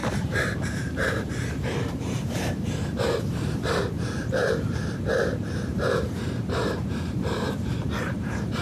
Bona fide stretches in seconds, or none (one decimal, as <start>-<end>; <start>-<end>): none